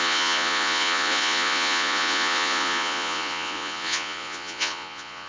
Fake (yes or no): yes